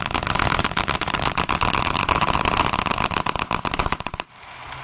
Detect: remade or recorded recorded